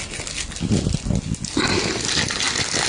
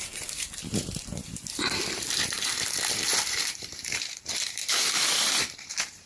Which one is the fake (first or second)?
second